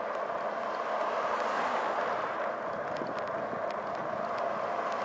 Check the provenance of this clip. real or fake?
real